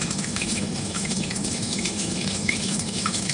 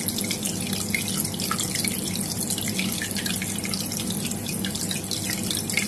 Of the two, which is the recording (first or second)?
second